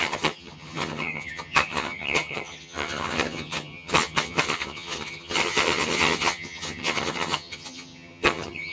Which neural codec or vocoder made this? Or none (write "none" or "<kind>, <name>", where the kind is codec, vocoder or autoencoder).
vocoder, HiFi-GAN